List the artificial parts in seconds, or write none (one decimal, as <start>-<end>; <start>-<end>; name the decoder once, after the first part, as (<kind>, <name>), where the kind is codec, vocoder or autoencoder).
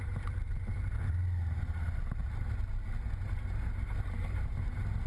2.2-2.8 (vocoder, BigVGAN v2)